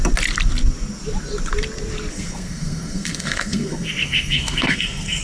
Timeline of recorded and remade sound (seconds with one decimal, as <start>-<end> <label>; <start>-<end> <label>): 0.0-2.1 recorded; 2.1-5.2 remade